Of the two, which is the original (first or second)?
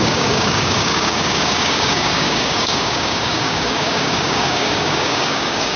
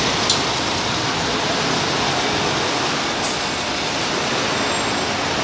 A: second